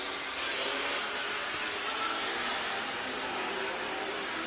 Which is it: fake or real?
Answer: fake